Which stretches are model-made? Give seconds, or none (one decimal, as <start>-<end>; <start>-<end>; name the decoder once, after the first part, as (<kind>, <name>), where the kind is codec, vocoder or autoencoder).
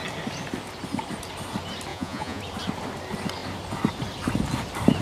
1.9-2.4 (vocoder, Vocos)